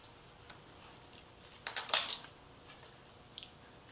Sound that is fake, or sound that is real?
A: fake